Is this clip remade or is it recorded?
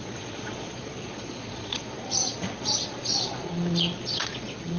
remade